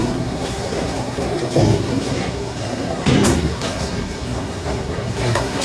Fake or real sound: fake